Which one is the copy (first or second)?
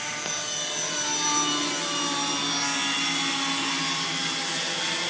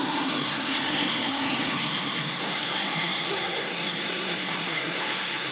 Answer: second